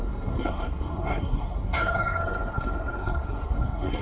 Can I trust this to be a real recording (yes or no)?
no